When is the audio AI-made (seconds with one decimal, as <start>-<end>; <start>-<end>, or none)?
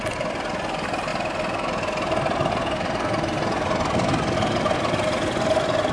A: none